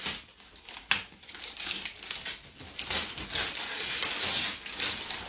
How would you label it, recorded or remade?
recorded